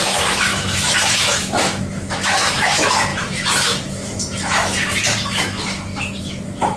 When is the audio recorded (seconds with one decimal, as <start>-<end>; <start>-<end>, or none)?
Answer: none